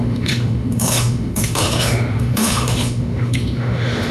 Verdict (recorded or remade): remade